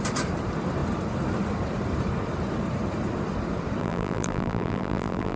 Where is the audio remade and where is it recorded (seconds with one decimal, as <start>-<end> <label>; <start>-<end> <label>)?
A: 0.0-3.8 recorded; 3.8-5.4 remade